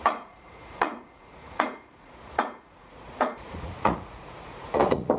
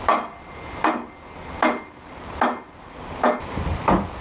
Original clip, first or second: second